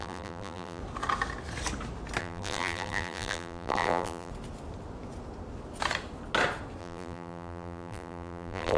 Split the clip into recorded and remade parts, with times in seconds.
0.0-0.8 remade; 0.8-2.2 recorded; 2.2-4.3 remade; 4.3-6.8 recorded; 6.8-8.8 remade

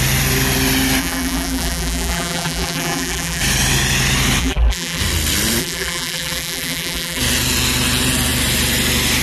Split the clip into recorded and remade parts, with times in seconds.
0.0-1.0 recorded; 1.0-3.4 remade; 3.4-4.4 recorded; 4.4-5.0 remade; 5.0-5.6 recorded; 5.6-7.2 remade; 7.2-9.2 recorded

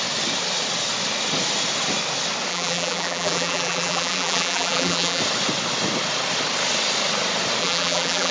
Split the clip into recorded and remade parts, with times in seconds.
0.0-2.5 recorded; 2.5-5.2 remade; 5.2-7.6 recorded; 7.6-8.3 remade

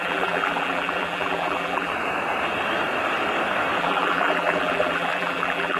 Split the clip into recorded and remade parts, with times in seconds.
0.0-1.9 remade; 1.9-3.8 recorded; 3.8-5.8 remade

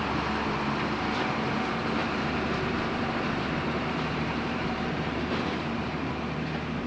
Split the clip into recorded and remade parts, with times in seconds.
0.0-2.0 recorded; 2.0-6.1 remade; 6.1-6.9 recorded

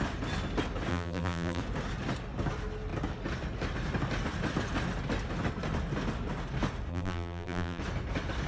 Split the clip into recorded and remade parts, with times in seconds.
0.0-0.9 recorded; 0.9-1.6 remade; 1.6-6.9 recorded; 6.9-7.8 remade; 7.8-8.5 recorded

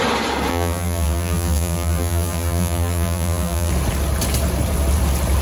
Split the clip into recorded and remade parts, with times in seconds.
0.0-0.5 recorded; 0.5-3.7 remade; 3.7-5.4 recorded

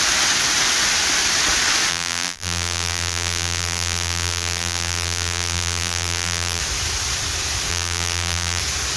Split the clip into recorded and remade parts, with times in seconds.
0.0-1.9 recorded; 1.9-6.6 remade; 6.6-7.7 recorded; 7.7-8.6 remade; 8.6-9.0 recorded